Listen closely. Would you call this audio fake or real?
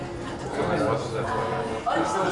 real